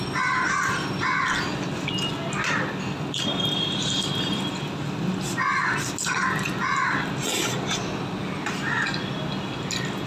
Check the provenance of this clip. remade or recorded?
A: recorded